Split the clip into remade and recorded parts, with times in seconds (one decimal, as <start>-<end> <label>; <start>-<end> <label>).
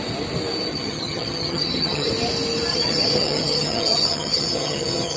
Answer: 0.0-0.7 recorded; 0.7-2.1 remade; 2.1-2.7 recorded; 2.7-5.2 remade